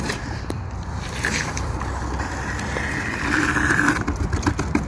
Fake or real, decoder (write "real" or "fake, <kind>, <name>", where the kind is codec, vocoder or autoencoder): fake, vocoder, BigVGAN v2